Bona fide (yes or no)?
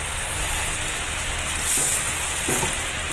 yes